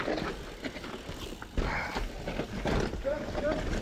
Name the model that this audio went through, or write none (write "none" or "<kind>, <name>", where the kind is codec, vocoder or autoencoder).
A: none